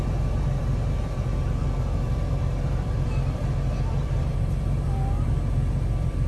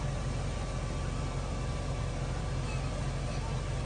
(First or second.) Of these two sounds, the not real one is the first